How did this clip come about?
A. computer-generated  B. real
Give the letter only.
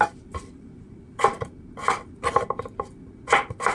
B